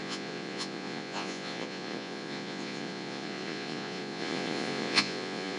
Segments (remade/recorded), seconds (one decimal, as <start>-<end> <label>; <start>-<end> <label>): 0.0-5.6 remade